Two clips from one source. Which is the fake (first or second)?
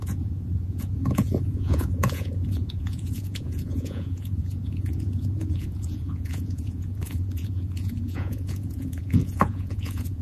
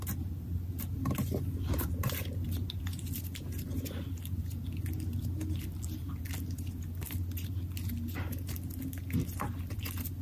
first